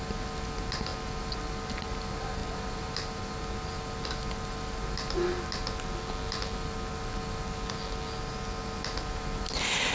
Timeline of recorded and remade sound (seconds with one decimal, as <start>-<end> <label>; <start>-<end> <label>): 0.0-9.9 recorded